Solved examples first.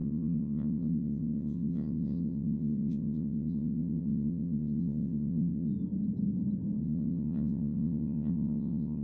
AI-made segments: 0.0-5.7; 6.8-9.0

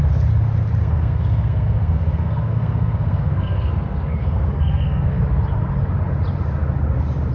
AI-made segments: 0.8-5.2

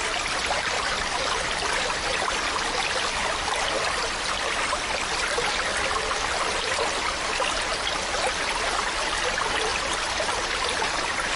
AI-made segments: 0.0-4.0; 5.1-7.7; 8.4-11.4

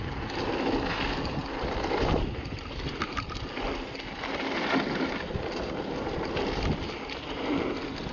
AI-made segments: none

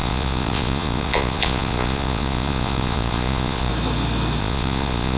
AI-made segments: 0.0-3.7; 4.4-5.2

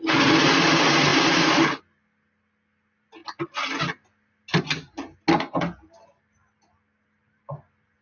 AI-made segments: none